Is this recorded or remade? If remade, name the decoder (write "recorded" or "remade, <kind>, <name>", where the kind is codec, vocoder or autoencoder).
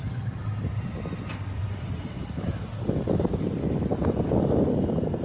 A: recorded